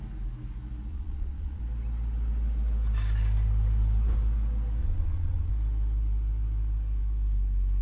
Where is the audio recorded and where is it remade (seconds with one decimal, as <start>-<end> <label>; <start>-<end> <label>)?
0.0-0.9 recorded; 0.9-1.6 remade; 1.6-4.8 recorded; 4.8-5.5 remade; 5.5-7.8 recorded

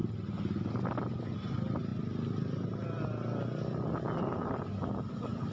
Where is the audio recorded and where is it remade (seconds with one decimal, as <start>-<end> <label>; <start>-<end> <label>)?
0.0-5.5 recorded

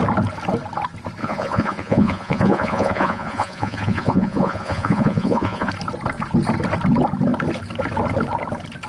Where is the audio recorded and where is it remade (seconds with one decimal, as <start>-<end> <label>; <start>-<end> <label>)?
0.0-1.2 recorded; 1.2-5.7 remade; 5.7-8.9 recorded

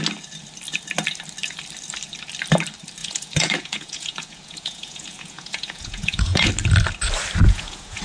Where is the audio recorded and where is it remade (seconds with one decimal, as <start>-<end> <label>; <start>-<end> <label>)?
0.0-3.0 recorded; 3.0-6.5 remade; 6.5-7.4 recorded; 7.4-8.0 remade

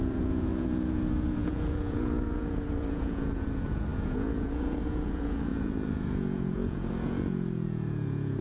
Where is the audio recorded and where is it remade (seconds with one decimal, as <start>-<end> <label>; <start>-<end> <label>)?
0.0-8.4 remade